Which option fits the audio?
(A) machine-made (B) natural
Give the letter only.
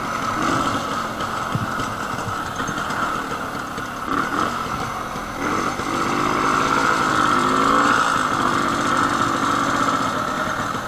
B